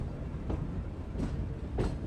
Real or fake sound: real